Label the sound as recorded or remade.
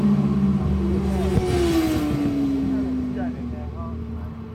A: recorded